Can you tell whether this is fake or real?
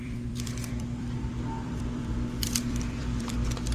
fake